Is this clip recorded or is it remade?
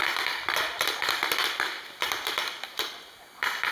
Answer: remade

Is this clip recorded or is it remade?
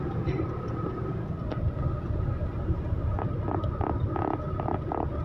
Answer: recorded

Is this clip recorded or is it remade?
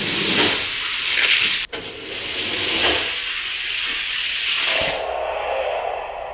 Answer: recorded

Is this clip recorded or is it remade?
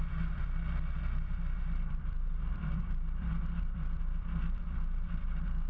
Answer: remade